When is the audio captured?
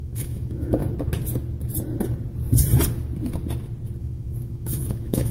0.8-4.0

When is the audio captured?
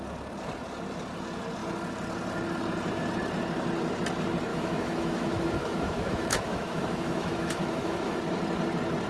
0.0-4.5; 8.2-9.1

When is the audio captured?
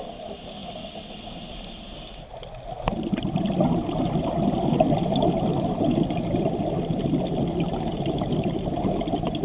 0.0-9.4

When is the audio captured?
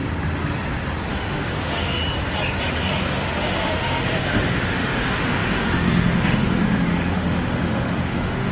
0.0-1.1; 2.0-2.8